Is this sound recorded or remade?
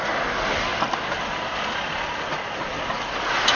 recorded